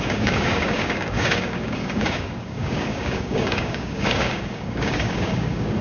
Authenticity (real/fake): fake